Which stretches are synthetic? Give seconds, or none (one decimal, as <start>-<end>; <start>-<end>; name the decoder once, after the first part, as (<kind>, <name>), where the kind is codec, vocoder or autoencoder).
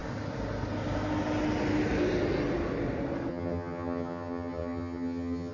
3.3-5.5 (vocoder, HiFi-GAN)